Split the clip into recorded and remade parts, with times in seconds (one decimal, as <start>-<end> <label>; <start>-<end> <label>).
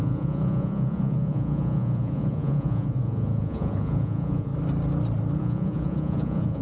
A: 0.0-4.5 remade; 4.5-5.4 recorded; 5.4-6.6 remade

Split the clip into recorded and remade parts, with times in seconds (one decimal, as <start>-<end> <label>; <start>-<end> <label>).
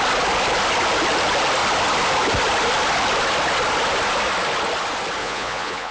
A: 0.0-5.2 recorded; 5.2-5.9 remade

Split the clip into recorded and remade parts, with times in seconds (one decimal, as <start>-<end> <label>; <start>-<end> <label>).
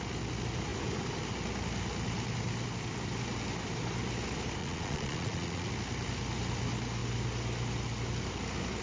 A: 0.0-4.6 recorded; 4.6-5.7 remade; 5.7-8.8 recorded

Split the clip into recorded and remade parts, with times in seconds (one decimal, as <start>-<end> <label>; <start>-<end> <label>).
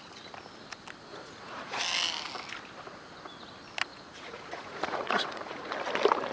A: 0.0-1.1 recorded; 1.1-1.8 remade; 1.8-3.9 recorded; 3.9-5.7 remade; 5.7-6.3 recorded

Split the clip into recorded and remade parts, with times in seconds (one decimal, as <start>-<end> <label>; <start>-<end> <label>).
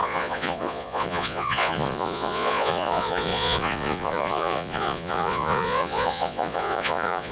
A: 0.0-7.3 remade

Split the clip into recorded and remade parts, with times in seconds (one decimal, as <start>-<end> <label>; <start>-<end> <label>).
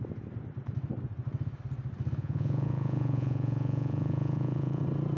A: 0.0-2.2 recorded; 2.2-4.8 remade; 4.8-5.2 recorded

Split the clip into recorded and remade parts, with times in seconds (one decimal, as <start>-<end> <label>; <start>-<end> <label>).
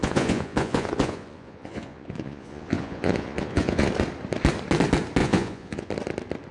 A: 0.0-3.9 remade; 3.9-5.2 recorded; 5.2-5.9 remade; 5.9-6.5 recorded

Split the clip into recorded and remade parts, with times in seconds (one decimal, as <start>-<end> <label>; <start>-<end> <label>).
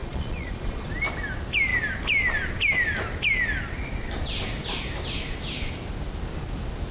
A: 0.0-0.9 remade; 0.9-6.9 recorded